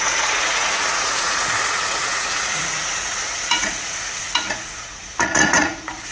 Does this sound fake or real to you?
fake